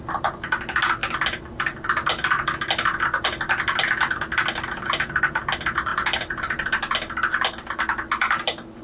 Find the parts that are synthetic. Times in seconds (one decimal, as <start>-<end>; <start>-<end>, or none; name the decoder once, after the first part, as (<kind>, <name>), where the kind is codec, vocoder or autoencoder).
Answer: none

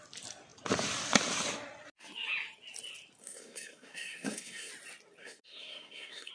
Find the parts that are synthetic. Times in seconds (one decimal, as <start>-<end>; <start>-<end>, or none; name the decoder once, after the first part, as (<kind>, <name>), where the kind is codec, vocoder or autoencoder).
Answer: 3.2-4.7 (codec, SNAC); 5.2-6.3

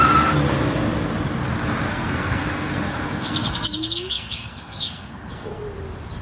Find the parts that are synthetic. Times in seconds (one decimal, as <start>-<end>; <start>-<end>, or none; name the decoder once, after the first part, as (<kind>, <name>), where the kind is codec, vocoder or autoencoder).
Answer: 1.9-5.6 (codec, SNAC)

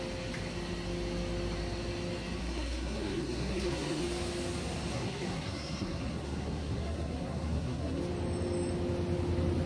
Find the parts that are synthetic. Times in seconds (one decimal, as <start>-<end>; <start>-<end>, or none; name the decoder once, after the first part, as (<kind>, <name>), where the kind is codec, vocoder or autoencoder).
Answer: 2.4-4.0 (codec, SNAC); 4.9-8.0

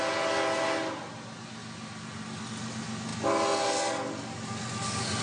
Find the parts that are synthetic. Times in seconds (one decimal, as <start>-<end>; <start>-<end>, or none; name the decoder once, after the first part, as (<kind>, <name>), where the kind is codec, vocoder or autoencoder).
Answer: none

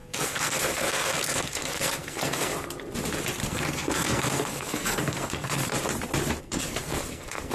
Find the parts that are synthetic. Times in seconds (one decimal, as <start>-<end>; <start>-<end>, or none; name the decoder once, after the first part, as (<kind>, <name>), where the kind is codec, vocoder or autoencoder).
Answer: 0.0-2.5 (codec, SNAC); 3.4-5.7; 6.4-7.5

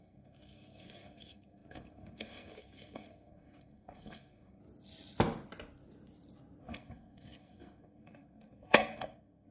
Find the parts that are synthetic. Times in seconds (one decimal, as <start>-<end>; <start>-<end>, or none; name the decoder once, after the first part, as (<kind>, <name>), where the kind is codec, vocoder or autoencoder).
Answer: 0.0-4.6 (codec, SNAC); 6.6-9.5

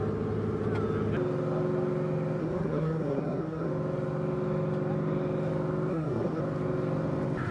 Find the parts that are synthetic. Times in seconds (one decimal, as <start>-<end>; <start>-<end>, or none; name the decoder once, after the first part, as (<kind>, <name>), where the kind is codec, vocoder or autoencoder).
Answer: 2.4-3.7 (codec, SNAC); 5.9-6.4